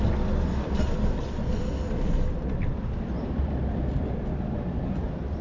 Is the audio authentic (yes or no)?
yes